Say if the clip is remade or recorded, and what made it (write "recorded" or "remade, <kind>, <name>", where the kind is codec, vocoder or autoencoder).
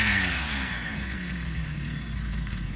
remade, codec, SNAC